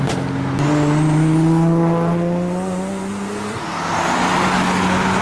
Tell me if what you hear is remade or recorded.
recorded